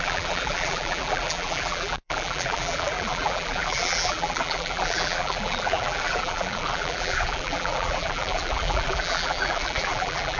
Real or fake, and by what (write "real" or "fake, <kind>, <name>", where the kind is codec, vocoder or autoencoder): fake, vocoder, BigVGAN v2